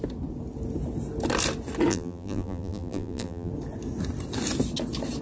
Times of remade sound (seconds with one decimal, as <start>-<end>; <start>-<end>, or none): 1.9-3.5